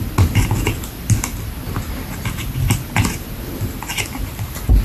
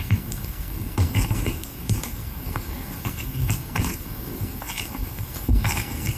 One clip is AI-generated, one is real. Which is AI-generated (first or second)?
second